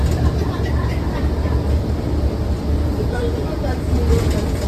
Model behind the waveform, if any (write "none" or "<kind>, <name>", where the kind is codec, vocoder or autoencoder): none